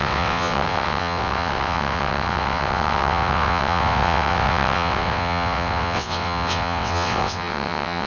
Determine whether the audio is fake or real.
fake